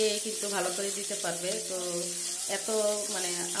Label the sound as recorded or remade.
recorded